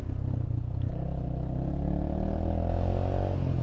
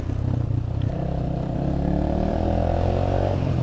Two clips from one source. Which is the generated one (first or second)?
second